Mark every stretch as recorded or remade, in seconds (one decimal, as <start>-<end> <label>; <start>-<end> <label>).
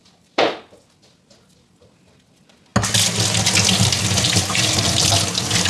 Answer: 0.0-5.7 recorded